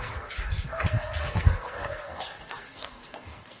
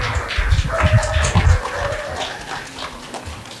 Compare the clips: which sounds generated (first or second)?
first